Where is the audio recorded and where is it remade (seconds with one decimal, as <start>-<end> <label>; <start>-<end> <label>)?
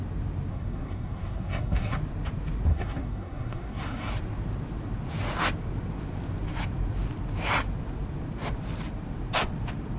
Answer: 0.0-0.5 recorded; 0.5-2.0 remade; 2.0-2.7 recorded; 2.7-4.1 remade; 4.1-10.0 recorded